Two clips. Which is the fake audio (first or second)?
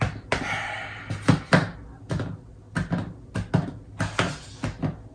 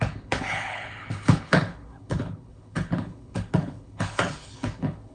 second